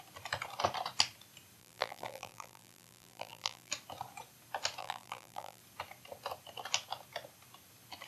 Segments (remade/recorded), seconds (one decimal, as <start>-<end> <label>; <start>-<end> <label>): 0.0-1.6 recorded; 1.6-3.7 remade; 3.7-4.8 recorded; 4.8-5.6 remade; 5.6-8.1 recorded